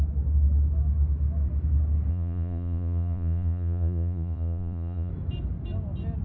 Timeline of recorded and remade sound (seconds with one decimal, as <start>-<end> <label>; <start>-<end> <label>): 0.0-2.1 recorded; 2.1-5.1 remade; 5.1-6.2 recorded